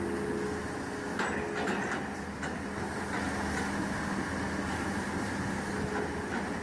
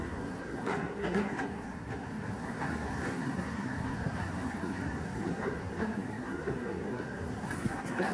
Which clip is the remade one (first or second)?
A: second